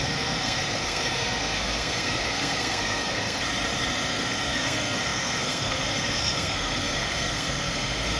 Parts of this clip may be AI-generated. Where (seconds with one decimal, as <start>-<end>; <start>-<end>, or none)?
0.0-3.4; 4.1-8.2